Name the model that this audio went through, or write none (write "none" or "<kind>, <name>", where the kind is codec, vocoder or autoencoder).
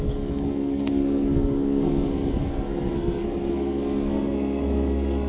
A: codec, SNAC